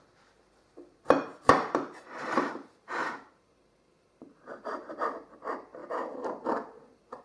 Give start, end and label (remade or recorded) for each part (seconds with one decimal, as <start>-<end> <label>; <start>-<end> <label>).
0.0-7.2 remade